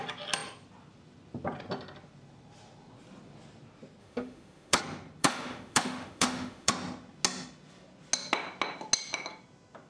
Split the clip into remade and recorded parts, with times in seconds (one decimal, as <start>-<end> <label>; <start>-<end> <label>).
0.0-4.0 recorded; 4.0-4.8 remade; 4.8-5.2 recorded; 5.2-6.7 remade; 6.7-9.9 recorded